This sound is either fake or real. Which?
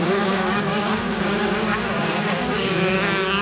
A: fake